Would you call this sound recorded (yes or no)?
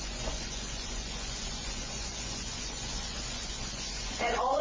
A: no